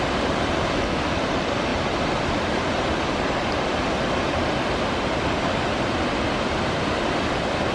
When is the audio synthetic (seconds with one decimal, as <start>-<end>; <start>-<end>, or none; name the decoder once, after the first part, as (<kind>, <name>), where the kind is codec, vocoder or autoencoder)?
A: none